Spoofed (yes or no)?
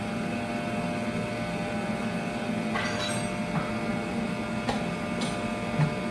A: no